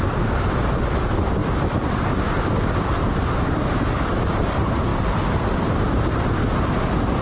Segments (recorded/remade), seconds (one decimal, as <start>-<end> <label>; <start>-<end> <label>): 0.0-7.2 recorded